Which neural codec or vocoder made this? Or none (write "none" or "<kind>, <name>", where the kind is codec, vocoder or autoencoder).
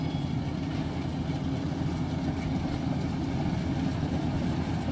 none